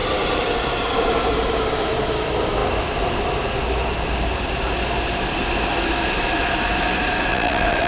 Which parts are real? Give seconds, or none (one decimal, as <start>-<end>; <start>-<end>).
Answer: 0.0-7.3